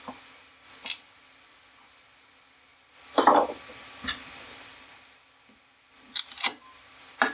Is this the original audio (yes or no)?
yes